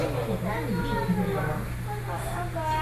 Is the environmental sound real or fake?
real